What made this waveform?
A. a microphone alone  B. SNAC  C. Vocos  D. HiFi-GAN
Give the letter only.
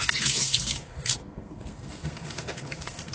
B